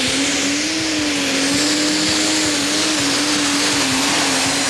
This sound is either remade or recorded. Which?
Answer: recorded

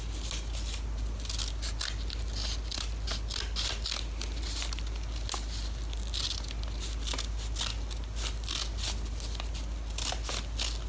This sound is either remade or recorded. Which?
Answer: recorded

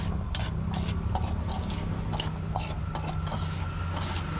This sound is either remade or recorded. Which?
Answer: recorded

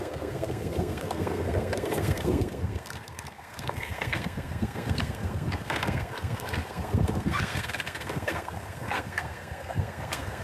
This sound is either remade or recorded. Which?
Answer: remade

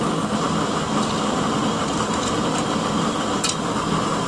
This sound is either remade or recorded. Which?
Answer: recorded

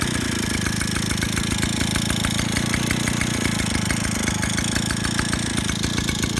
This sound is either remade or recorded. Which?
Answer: recorded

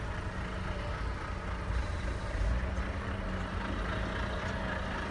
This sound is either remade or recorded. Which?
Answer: recorded